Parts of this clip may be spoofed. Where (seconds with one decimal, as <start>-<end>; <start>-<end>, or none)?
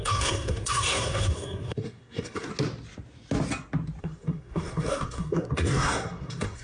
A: 0.0-2.5; 4.0-6.6